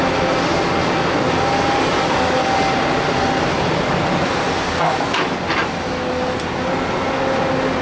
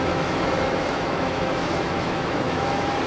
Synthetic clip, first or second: second